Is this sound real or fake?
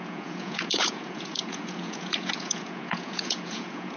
fake